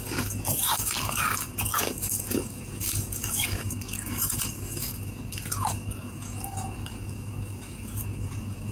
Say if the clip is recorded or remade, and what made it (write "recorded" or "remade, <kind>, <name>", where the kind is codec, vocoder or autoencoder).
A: remade, codec, DAC